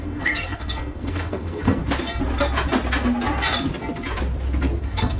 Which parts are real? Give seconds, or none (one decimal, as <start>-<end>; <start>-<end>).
1.8-4.8